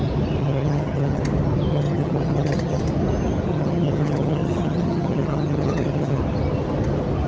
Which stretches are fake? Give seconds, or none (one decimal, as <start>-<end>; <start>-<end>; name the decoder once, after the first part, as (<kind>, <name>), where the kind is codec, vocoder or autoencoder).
0.4-1.2 (vocoder, HiFi-GAN); 1.7-2.8; 3.5-6.2